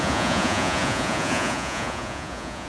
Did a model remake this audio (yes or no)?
yes